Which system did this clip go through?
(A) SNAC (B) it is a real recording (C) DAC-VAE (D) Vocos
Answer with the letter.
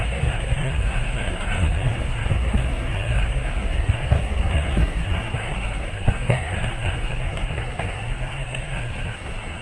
A